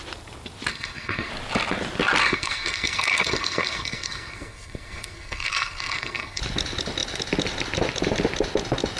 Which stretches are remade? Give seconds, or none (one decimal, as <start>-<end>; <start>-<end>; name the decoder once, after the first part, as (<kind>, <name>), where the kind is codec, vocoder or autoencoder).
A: 0.7-1.3 (codec, SNAC); 2.2-6.4